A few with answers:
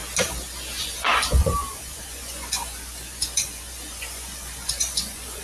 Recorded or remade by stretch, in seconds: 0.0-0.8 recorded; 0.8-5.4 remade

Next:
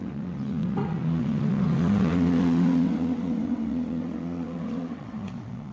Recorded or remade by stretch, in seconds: 0.0-5.7 remade

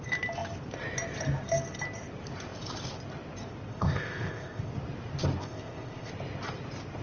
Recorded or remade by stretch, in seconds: 0.0-3.7 recorded; 3.7-4.7 remade; 4.7-5.4 recorded; 5.4-6.1 remade; 6.1-7.0 recorded

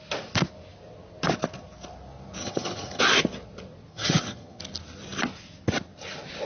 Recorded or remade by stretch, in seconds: 0.0-2.4 recorded; 2.4-3.0 remade; 3.0-3.9 recorded; 3.9-4.6 remade; 4.6-6.5 recorded

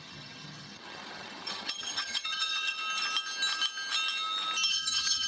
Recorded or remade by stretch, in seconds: 0.0-2.8 remade; 2.8-4.7 recorded; 4.7-5.3 remade

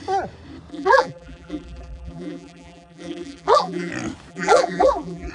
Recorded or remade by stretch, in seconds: 0.0-0.7 recorded; 0.7-3.9 remade; 3.9-4.3 recorded; 4.3-5.3 remade